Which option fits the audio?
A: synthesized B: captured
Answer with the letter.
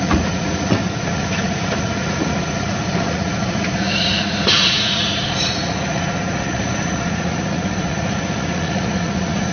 A